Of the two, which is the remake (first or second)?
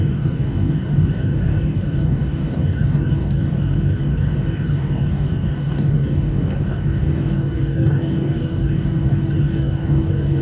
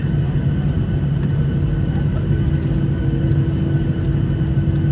first